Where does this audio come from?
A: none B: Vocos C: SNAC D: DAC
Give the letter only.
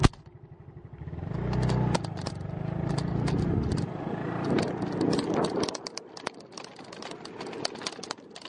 A